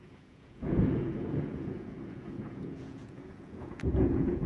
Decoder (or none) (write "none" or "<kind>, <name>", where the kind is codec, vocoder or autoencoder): vocoder, Vocos